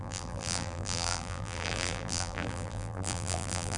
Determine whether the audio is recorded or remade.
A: remade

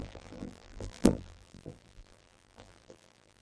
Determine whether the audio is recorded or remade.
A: remade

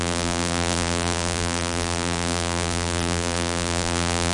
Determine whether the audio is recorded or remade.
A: remade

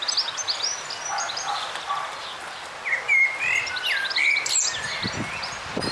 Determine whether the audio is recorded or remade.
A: remade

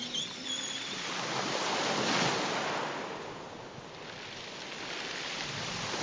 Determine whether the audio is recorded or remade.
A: recorded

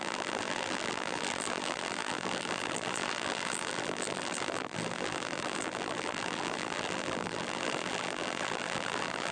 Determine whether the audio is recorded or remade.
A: remade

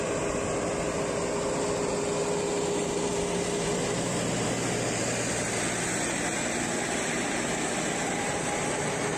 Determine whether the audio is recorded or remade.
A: recorded